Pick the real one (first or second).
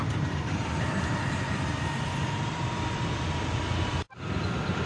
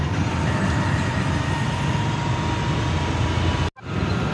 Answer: second